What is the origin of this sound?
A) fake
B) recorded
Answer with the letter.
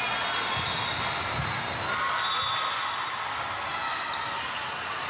B